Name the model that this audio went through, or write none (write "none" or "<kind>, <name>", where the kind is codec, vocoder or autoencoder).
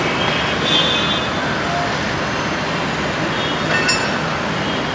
none